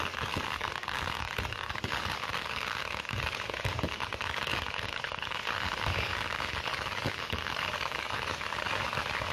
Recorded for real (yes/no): no